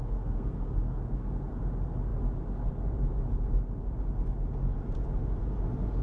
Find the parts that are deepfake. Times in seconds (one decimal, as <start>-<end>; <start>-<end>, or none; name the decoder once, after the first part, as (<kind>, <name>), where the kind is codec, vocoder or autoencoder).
0.0-1.6 (codec, SNAC)